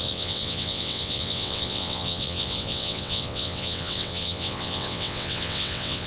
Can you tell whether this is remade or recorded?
remade